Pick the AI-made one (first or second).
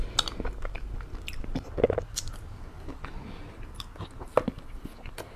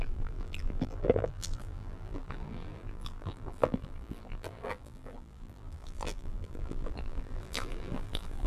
second